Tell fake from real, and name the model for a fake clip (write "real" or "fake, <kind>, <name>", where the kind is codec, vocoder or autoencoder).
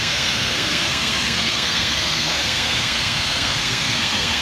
fake, codec, SNAC